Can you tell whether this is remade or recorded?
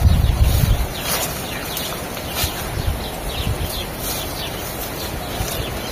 recorded